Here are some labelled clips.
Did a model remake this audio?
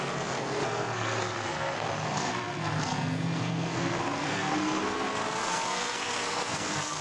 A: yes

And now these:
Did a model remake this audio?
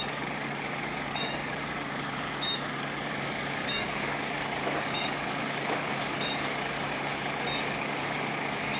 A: yes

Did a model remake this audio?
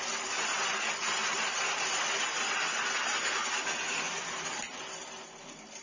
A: no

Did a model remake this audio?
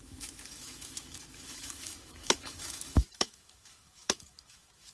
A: yes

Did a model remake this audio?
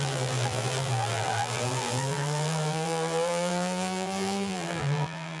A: yes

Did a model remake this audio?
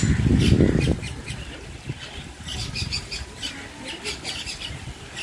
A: no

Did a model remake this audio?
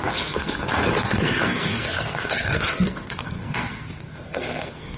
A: yes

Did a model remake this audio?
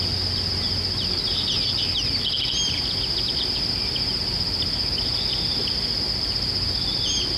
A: no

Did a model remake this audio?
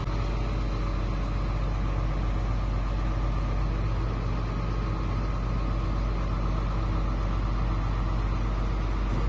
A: no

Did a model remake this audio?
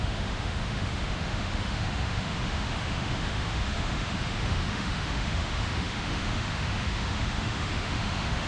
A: yes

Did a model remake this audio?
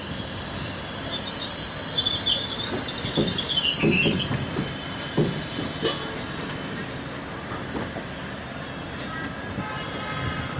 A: no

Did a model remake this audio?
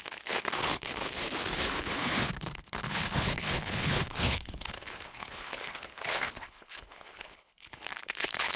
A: yes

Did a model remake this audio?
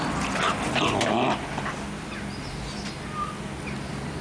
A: no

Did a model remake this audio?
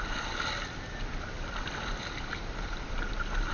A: no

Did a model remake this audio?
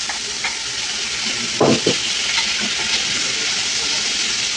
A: no